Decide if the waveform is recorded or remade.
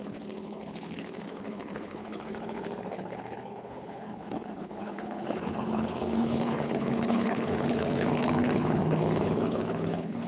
remade